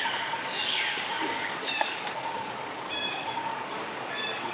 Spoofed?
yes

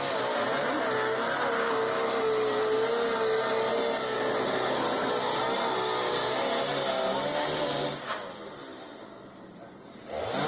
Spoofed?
no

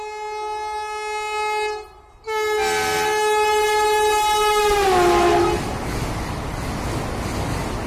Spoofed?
no